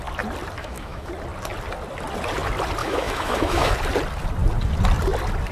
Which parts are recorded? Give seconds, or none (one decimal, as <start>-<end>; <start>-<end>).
0.0-0.6; 1.1-2.8; 3.7-5.5